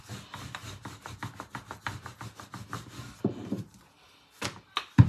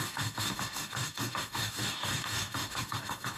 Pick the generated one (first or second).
second